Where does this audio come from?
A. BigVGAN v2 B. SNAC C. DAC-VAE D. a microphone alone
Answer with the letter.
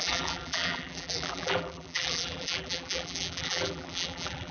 A